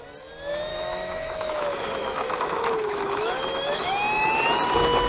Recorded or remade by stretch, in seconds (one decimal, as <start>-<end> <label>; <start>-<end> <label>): 0.0-0.7 recorded; 0.7-3.8 remade; 3.8-5.1 recorded